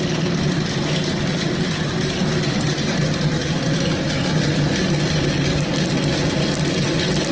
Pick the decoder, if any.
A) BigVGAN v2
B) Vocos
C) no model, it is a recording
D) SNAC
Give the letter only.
C